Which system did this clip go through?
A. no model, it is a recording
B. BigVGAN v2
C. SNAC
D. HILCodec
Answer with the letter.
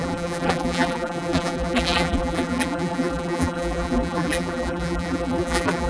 B